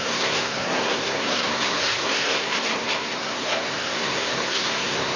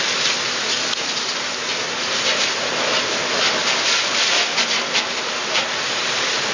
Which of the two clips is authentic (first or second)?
second